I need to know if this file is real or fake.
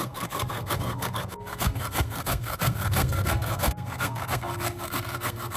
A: fake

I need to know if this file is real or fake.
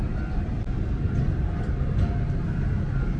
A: real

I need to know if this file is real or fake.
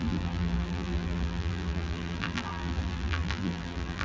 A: fake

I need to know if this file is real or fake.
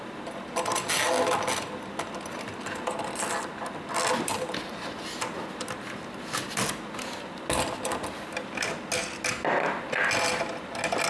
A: real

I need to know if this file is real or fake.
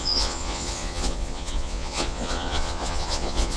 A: fake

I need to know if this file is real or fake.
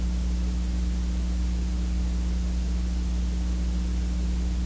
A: real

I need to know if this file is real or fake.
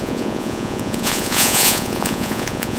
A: fake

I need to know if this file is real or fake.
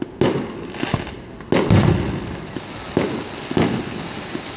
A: real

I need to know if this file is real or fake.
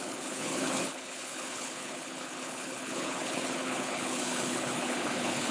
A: fake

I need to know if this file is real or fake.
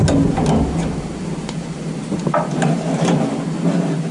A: real